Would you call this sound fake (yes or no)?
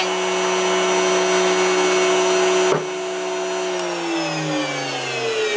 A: no